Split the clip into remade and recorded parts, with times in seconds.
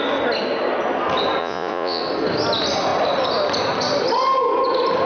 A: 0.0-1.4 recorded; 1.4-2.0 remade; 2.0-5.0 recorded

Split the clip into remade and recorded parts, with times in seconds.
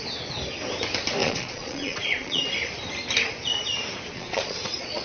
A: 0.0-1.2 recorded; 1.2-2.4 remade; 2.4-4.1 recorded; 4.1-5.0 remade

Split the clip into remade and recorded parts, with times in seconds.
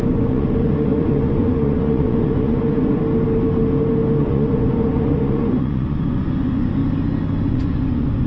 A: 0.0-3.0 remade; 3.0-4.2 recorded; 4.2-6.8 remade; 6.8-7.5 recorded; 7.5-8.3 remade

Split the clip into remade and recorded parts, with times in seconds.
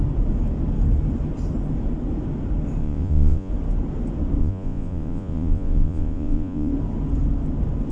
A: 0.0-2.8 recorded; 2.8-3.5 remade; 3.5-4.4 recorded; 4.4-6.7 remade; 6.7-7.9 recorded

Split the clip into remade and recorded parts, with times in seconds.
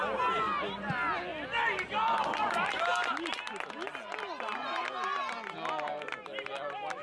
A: 0.0-7.0 recorded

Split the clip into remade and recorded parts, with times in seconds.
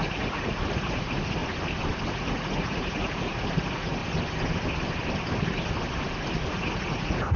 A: 0.0-1.4 remade; 1.4-2.1 recorded; 2.1-4.0 remade; 4.0-6.5 recorded; 6.5-7.4 remade